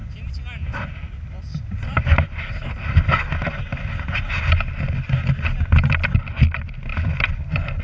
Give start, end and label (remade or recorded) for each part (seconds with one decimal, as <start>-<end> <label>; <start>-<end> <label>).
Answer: 0.0-6.9 recorded; 6.9-7.8 remade